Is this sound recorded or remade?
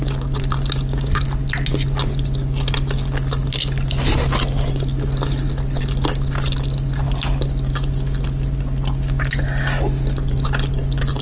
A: recorded